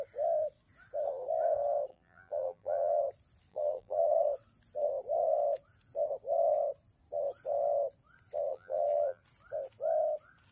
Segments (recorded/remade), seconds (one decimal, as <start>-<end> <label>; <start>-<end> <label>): 0.0-1.9 recorded; 1.9-3.0 remade; 3.0-3.5 recorded; 3.5-4.1 remade; 4.1-8.5 recorded; 8.5-9.2 remade; 9.2-10.5 recorded

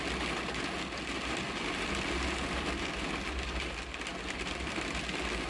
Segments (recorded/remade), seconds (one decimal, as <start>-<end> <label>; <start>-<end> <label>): 0.0-5.5 recorded

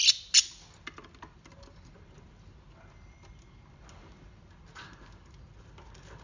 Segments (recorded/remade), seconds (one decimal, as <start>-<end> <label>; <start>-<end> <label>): 0.0-6.2 recorded

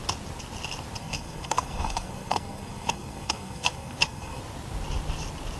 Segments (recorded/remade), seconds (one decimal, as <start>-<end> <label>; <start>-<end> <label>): 0.0-1.0 recorded; 1.0-4.4 remade; 4.4-5.6 recorded

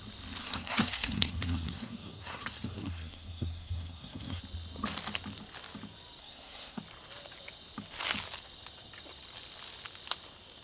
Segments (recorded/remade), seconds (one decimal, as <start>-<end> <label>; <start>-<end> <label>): 0.0-0.4 recorded; 0.4-4.4 remade; 4.4-6.2 recorded; 6.2-6.8 remade; 6.8-10.6 recorded

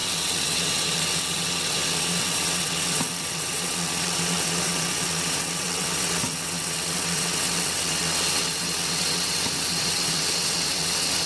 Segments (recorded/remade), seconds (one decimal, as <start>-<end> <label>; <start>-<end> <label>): 0.0-11.3 remade